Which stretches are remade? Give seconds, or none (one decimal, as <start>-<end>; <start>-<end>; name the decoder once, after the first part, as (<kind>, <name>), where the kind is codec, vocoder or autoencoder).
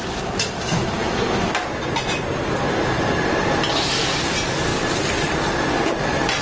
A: none